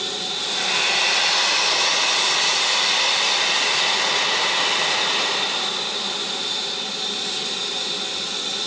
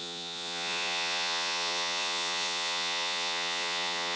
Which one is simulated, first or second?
second